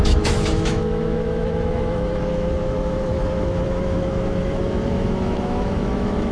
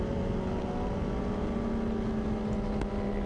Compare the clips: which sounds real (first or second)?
second